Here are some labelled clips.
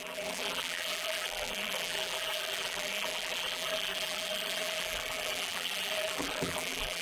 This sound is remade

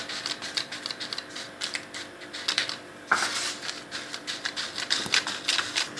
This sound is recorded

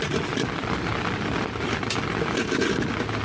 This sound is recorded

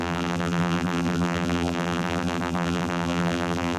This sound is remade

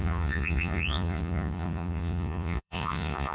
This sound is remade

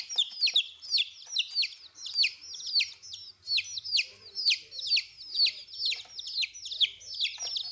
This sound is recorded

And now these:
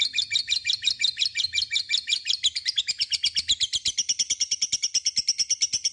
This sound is recorded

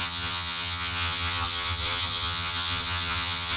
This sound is remade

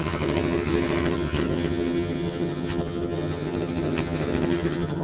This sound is remade